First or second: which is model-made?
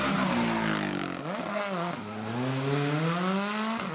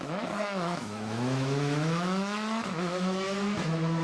second